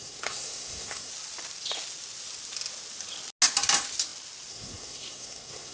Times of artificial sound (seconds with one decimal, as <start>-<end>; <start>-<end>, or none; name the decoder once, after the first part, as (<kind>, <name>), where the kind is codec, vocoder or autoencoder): 0.0-1.1 (codec, SNAC); 4.5-5.7